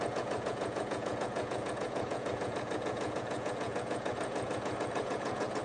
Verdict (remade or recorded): remade